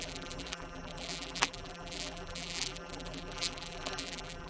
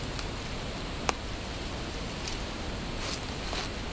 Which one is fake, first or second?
first